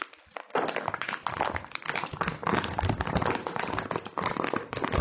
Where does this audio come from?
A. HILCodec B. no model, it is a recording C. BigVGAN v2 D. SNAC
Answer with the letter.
B